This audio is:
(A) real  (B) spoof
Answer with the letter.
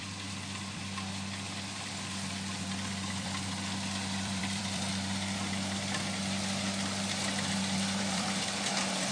B